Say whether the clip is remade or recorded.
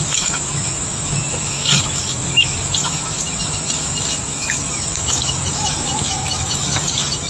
remade